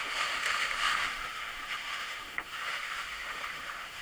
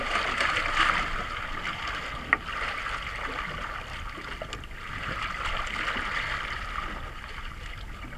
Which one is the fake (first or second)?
first